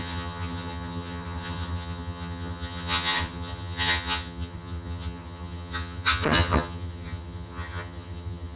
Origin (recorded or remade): remade